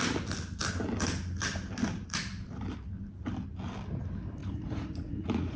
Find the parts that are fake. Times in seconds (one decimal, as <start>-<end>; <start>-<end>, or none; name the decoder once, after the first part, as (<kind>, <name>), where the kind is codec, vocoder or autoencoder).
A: 4.4-5.6 (vocoder, Vocos)